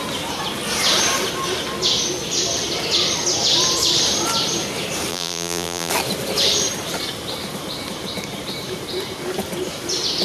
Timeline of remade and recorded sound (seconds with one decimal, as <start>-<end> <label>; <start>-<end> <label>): 0.0-5.1 recorded; 5.1-5.9 remade; 5.9-10.2 recorded